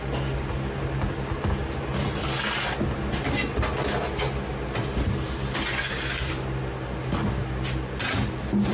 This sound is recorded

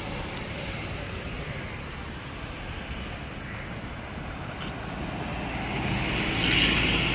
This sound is recorded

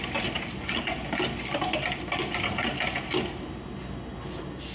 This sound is recorded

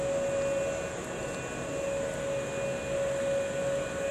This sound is recorded